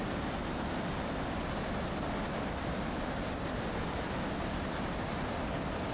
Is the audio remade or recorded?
recorded